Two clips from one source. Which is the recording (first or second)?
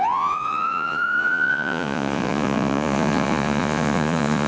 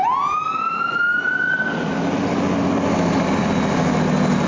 second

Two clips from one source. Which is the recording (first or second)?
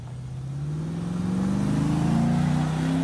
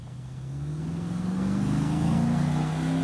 first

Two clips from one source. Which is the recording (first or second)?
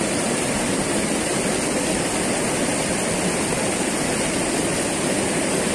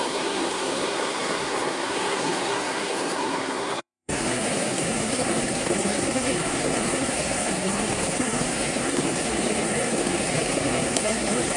first